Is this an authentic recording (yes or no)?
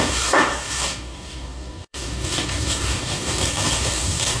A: no